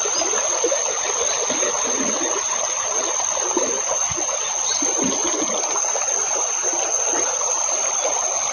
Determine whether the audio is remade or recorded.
recorded